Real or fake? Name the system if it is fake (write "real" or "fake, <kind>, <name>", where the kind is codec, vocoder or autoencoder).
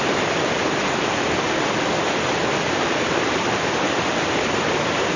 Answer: real